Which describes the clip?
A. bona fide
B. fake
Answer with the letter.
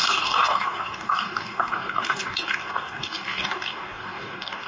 B